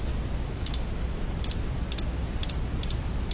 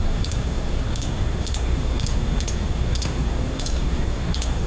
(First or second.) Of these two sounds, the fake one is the second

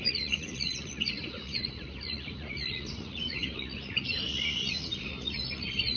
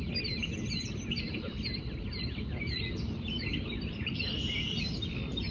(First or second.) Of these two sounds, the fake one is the first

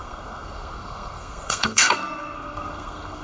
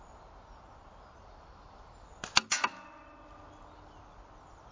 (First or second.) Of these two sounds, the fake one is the first